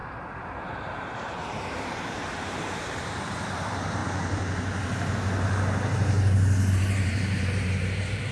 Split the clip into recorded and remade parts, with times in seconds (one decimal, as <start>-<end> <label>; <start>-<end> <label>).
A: 0.0-0.6 recorded; 0.6-4.0 remade; 4.0-6.7 recorded; 6.7-8.3 remade